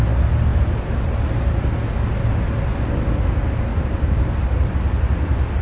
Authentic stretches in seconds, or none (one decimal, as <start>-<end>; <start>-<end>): 0.0-0.5; 1.5-3.7; 4.7-5.6